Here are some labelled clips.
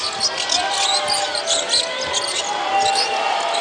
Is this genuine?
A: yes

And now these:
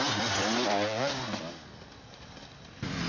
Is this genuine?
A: yes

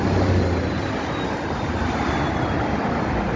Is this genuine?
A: yes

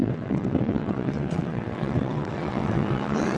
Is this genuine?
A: no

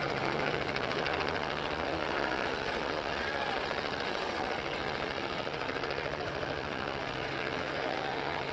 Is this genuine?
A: no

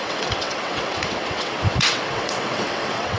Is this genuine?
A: no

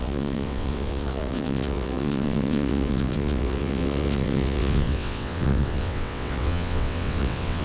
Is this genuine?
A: no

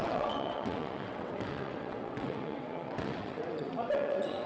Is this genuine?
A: no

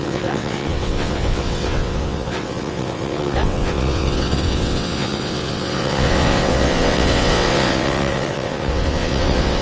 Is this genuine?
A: no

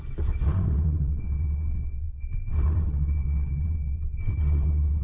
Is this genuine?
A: no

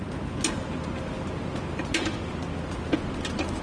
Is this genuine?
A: yes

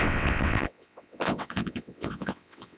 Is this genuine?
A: no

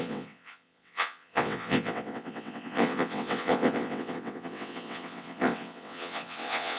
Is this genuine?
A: no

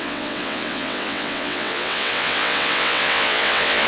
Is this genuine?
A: no